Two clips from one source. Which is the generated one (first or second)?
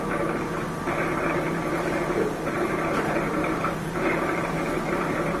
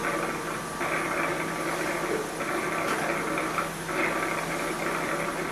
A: first